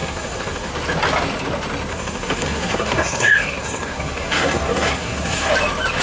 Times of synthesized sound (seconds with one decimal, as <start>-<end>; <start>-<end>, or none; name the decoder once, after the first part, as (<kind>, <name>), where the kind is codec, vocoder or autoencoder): 0.0-0.7 (codec, SNAC); 1.9-5.5